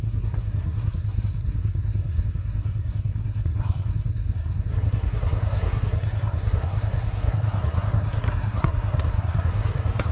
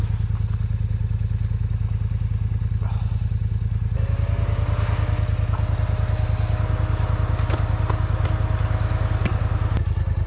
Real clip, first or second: second